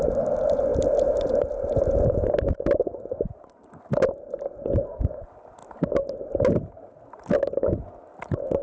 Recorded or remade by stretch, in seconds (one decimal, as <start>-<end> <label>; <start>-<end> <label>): 0.0-8.6 recorded